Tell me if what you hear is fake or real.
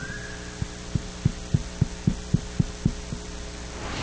real